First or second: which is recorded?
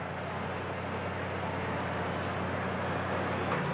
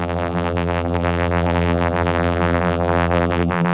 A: first